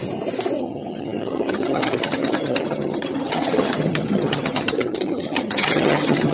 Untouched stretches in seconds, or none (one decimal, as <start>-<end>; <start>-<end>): 0.0-0.6